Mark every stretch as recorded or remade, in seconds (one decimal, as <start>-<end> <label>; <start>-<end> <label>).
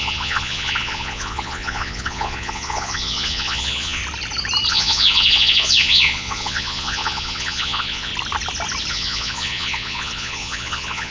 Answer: 0.0-4.0 remade; 4.0-4.7 recorded; 4.7-8.1 remade; 8.1-8.9 recorded; 8.9-11.1 remade